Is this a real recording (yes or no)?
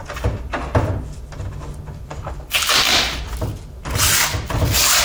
yes